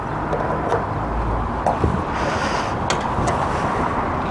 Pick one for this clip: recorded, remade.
recorded